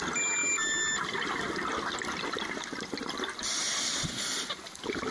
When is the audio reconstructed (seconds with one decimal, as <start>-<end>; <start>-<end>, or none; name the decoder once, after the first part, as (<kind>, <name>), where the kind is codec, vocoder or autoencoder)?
1.7-5.1 (vocoder, BigVGAN v2)